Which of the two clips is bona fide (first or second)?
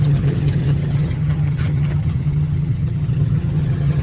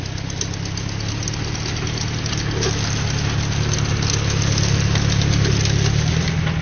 second